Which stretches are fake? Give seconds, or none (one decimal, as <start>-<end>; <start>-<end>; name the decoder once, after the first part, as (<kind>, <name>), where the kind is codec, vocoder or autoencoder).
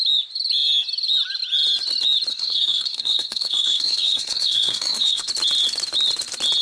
2.3-5.3 (codec, SNAC)